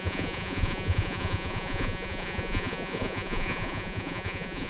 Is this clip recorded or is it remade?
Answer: remade